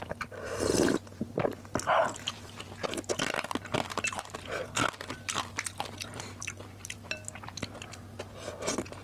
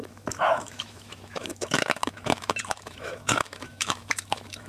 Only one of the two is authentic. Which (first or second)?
first